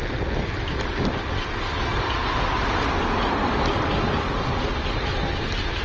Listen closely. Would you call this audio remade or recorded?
recorded